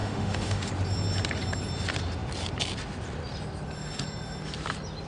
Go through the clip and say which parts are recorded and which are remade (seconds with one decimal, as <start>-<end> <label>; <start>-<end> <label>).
0.0-0.7 remade; 0.7-5.1 recorded